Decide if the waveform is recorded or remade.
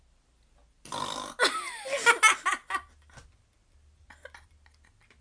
recorded